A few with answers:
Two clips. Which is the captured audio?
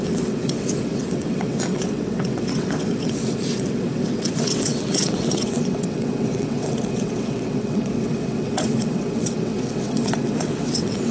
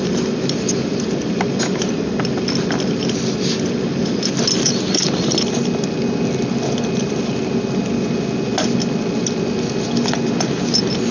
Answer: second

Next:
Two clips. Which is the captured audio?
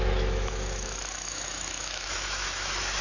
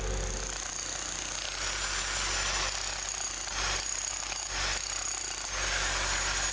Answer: second